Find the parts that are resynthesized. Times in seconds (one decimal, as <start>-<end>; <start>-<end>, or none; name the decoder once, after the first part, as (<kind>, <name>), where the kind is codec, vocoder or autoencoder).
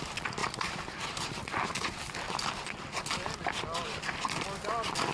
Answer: 0.4-1.4 (vocoder, BigVGAN v2)